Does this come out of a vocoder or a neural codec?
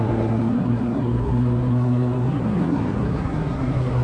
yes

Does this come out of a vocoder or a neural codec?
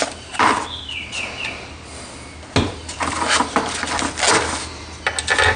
no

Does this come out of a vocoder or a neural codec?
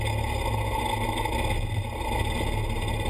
no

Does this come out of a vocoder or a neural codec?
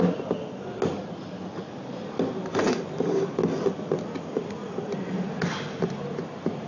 no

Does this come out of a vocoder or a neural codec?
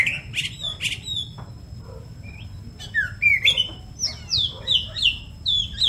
no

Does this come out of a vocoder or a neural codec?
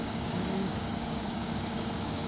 yes